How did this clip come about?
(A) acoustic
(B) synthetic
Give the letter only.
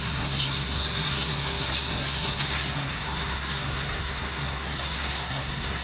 B